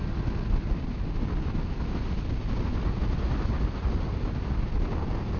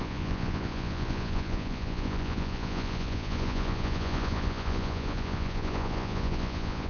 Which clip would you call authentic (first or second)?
first